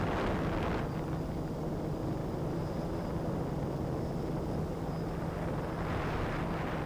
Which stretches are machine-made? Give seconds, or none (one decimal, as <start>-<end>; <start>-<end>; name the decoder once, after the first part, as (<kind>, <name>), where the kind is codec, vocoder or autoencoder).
2.2-3.1 (vocoder, BigVGAN v2)